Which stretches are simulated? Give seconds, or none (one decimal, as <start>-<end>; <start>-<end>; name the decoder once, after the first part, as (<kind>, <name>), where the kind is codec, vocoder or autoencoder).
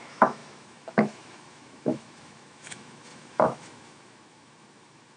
0.0-5.2 (autoencoder, DAC-VAE)